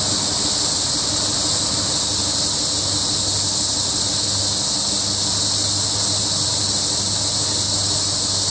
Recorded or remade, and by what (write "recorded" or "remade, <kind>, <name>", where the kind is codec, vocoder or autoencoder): recorded